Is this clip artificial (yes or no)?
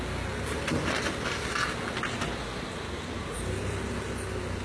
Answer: no